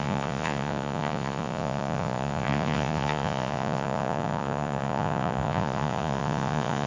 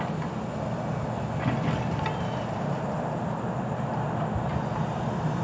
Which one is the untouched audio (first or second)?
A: second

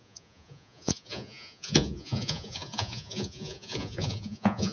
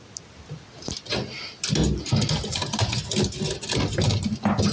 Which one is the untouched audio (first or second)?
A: second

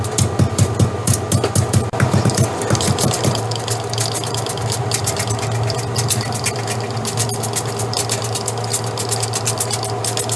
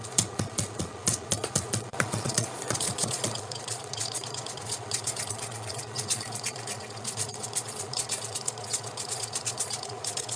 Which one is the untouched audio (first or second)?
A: first